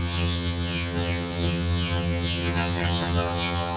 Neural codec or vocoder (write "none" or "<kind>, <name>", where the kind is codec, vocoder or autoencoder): vocoder, HiFi-GAN